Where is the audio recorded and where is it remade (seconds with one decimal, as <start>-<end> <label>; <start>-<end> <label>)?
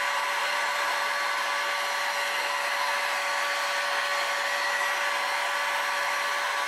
0.0-0.4 recorded; 0.4-1.0 remade; 1.0-6.7 recorded